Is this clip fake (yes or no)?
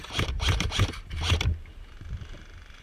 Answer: yes